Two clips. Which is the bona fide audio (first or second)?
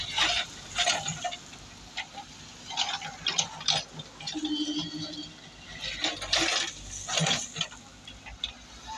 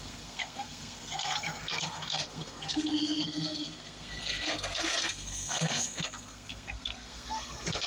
first